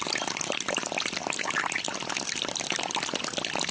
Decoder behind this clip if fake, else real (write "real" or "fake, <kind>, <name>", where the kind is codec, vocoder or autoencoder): real